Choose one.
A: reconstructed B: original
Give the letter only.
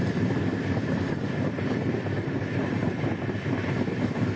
B